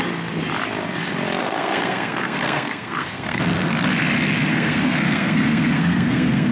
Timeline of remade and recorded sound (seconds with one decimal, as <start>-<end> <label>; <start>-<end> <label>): 0.0-1.4 recorded; 1.4-3.4 remade; 3.4-4.5 recorded; 4.5-6.5 remade